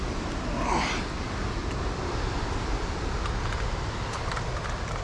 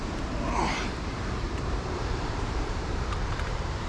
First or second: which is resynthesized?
second